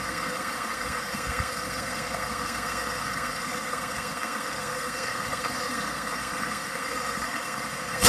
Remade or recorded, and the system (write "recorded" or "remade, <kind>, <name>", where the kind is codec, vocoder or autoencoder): remade, codec, SNAC